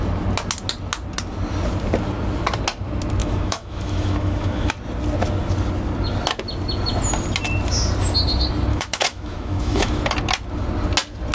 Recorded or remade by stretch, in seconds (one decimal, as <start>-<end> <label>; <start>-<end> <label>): 0.0-3.2 recorded; 3.2-4.7 remade; 4.7-8.7 recorded; 8.7-10.0 remade; 10.0-11.3 recorded